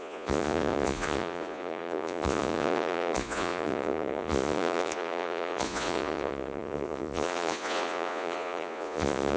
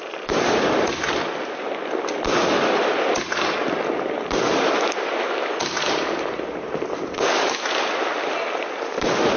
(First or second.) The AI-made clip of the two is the first